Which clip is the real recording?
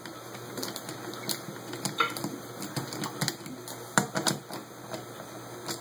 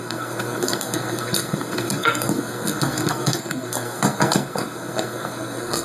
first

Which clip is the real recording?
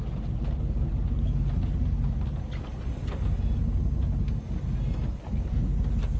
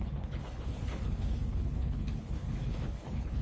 first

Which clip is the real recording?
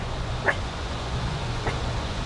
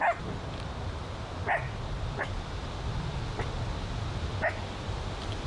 second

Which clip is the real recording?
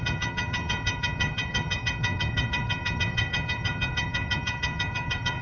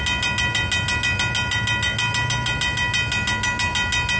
second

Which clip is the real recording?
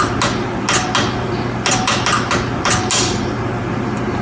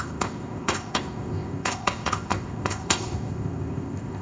first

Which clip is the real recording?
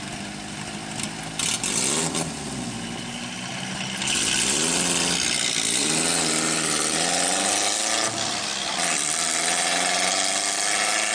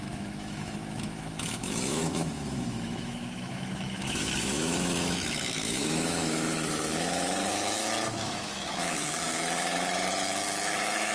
first